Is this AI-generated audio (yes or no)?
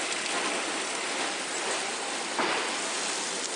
no